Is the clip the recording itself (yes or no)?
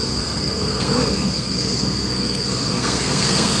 no